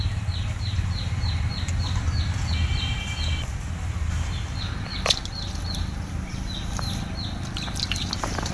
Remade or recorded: recorded